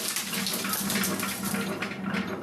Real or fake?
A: real